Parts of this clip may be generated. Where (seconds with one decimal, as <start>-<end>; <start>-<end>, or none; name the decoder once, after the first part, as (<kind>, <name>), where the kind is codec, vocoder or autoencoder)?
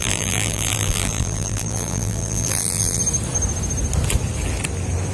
0.0-3.0 (vocoder, BigVGAN v2)